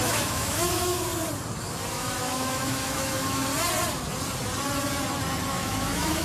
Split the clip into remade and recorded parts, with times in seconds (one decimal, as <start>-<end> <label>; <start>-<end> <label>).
0.0-1.1 remade; 1.1-1.9 recorded; 1.9-3.5 remade; 3.5-5.5 recorded; 5.5-6.2 remade